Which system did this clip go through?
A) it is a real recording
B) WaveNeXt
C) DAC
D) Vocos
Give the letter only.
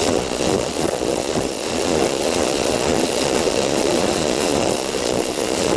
D